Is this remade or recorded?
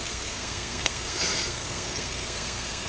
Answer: remade